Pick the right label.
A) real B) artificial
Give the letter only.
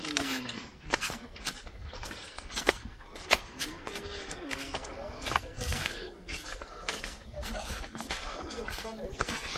B